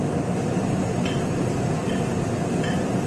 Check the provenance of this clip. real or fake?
real